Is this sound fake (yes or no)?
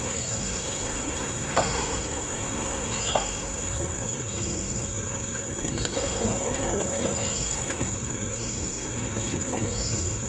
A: yes